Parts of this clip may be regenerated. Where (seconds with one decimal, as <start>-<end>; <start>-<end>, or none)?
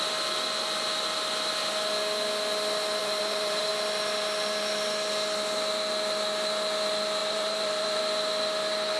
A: 3.0-3.7; 7.2-8.0